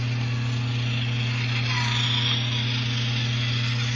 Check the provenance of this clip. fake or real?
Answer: real